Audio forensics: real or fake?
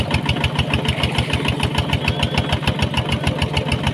real